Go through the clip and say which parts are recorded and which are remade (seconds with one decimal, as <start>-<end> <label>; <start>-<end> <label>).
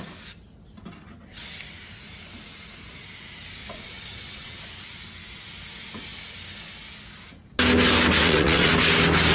0.0-3.6 recorded; 3.6-4.6 remade; 4.6-8.2 recorded; 8.2-8.7 remade; 8.7-9.3 recorded